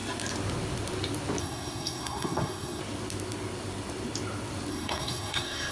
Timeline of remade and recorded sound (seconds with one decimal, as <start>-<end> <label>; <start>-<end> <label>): 0.0-1.4 recorded; 1.4-2.8 remade; 2.8-4.7 recorded; 4.7-5.7 remade